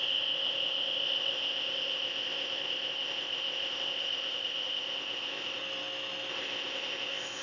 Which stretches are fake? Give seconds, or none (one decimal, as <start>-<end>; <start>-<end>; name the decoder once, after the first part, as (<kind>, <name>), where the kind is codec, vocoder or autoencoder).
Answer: 0.0-5.6 (codec, ZipCodec); 6.3-7.4